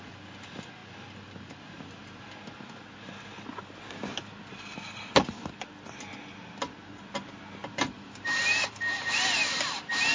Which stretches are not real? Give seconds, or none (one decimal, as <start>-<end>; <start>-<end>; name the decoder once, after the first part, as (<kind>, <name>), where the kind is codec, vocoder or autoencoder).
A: 7.6-10.1 (vocoder, BigVGAN v2)